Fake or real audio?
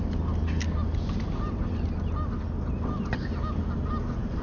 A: real